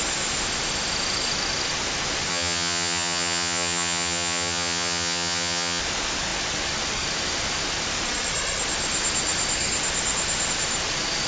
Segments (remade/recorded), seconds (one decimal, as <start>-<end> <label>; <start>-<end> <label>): 0.0-2.3 recorded; 2.3-5.8 remade; 5.8-11.3 recorded